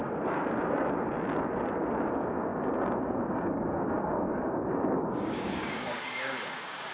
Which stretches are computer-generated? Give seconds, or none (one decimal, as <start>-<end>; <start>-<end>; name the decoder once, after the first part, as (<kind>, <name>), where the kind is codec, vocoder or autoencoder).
2.1-6.9 (codec, DAC)